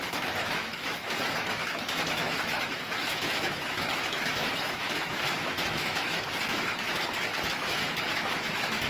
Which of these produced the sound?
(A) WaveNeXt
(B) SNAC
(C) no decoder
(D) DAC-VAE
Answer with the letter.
D